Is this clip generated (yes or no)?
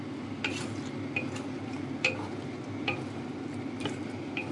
no